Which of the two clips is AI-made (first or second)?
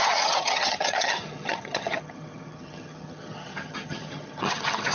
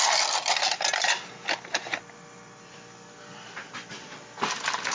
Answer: first